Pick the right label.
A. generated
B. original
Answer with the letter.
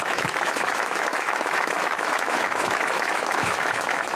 A